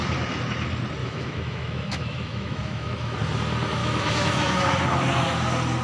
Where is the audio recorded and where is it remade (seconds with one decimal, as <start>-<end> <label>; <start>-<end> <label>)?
0.0-1.0 recorded; 1.0-3.2 remade; 3.2-3.8 recorded; 3.8-4.6 remade; 4.6-5.8 recorded